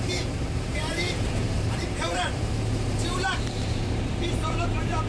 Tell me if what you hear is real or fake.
fake